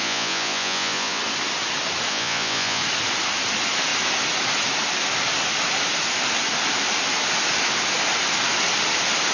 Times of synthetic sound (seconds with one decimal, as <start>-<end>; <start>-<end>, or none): 0.0-1.2; 2.1-2.8